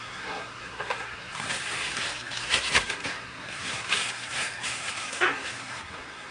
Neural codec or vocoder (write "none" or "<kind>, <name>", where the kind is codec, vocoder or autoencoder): codec, SNAC